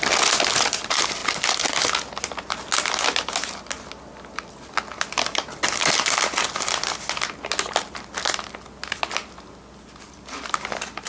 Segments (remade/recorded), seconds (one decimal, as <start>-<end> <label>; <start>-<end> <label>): 0.0-11.1 recorded